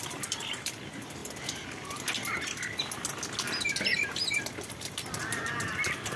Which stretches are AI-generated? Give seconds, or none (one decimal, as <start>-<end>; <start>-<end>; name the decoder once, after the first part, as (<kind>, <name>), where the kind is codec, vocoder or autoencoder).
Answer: 0.0-0.7 (vocoder, BigVGAN v2)